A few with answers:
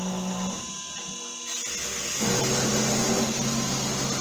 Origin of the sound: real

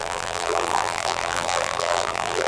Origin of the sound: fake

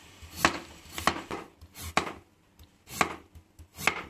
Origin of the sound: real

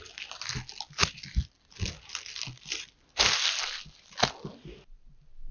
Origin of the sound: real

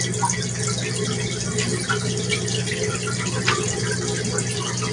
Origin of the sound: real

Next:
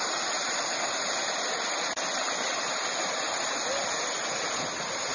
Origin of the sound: real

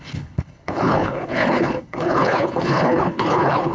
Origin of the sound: fake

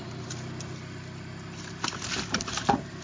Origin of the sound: real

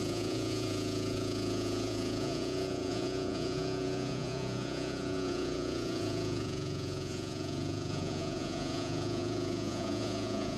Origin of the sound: fake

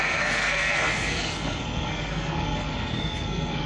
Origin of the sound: fake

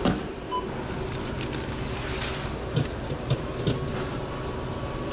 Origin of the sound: real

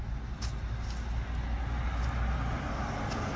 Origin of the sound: real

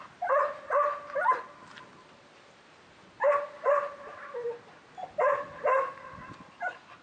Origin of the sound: real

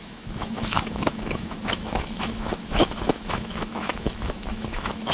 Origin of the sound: fake